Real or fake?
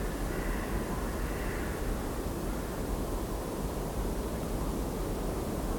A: real